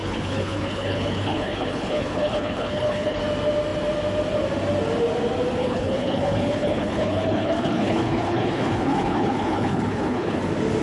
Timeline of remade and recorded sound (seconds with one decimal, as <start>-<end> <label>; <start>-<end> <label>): 0.0-3.2 remade; 3.2-5.6 recorded; 5.6-10.4 remade; 10.4-10.8 recorded